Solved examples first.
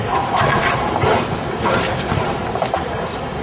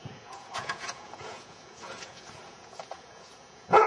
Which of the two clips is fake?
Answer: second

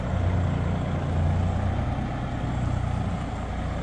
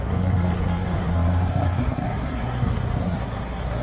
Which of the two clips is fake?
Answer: second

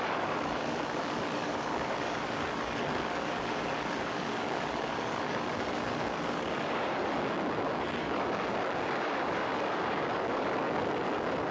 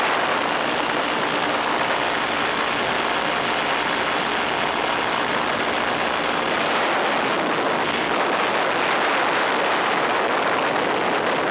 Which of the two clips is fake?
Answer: first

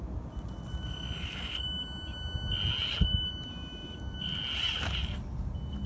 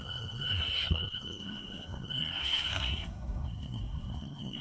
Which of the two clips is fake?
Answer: second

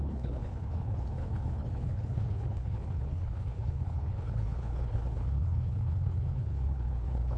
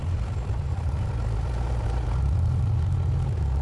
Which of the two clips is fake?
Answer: first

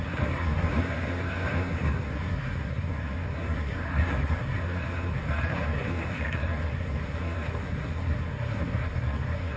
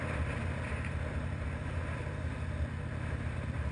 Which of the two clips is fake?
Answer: first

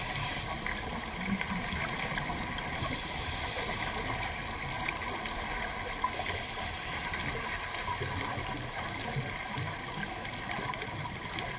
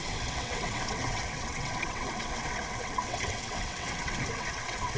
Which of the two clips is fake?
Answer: second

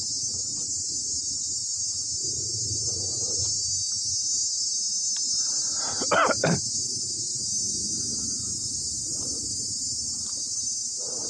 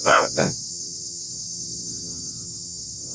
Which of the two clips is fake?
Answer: second